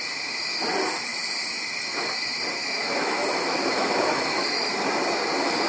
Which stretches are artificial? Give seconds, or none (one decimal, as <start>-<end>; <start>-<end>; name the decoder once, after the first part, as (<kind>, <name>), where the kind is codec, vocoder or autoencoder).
2.6-4.7 (autoencoder, DAC-VAE)

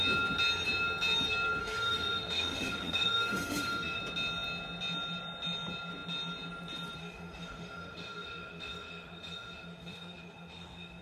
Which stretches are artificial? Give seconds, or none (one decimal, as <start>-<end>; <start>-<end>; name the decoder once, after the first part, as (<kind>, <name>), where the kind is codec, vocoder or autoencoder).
1.6-4.0 (autoencoder, DAC-VAE); 7.0-11.0

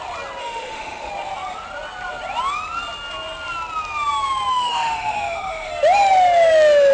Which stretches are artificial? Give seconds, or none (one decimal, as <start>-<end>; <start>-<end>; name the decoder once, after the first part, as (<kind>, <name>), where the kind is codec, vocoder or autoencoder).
0.4-1.1 (autoencoder, DAC-VAE); 4.5-5.7

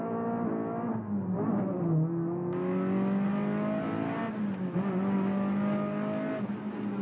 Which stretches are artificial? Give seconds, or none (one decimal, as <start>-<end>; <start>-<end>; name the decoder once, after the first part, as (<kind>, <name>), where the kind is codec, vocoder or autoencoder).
none

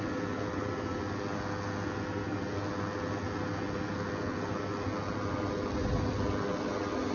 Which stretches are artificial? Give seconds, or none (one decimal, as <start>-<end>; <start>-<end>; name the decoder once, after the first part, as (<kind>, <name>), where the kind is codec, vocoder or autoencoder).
none

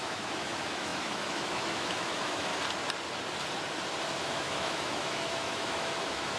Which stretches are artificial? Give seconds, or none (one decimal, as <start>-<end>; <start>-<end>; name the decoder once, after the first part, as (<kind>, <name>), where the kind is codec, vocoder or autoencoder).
0.0-2.5 (autoencoder, DAC-VAE); 4.2-6.4

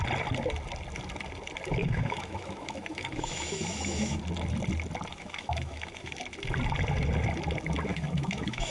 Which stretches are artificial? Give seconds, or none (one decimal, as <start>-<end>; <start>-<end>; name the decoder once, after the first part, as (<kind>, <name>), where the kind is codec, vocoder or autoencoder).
1.8-4.2 (autoencoder, DAC-VAE); 5.1-6.2; 7.9-8.7

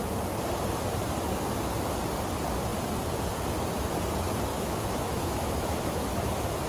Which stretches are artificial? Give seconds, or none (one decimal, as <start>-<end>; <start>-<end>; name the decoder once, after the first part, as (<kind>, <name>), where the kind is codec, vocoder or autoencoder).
4.5-6.7 (autoencoder, DAC-VAE)